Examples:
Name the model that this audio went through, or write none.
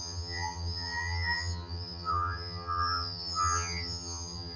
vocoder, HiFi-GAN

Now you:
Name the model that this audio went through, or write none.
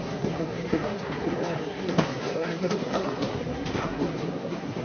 codec, SNAC